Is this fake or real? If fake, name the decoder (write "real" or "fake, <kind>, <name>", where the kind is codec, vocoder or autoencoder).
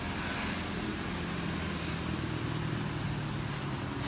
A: real